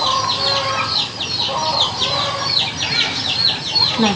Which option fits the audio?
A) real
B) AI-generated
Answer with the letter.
A